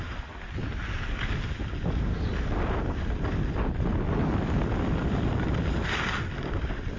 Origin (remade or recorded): recorded